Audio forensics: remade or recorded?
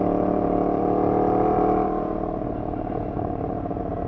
remade